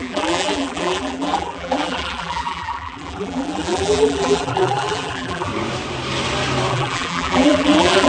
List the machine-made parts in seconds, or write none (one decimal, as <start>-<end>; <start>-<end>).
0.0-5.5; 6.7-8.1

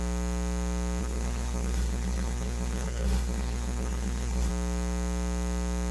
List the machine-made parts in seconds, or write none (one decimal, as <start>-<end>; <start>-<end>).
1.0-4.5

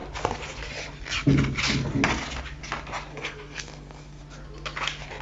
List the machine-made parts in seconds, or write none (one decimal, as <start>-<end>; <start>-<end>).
3.1-4.2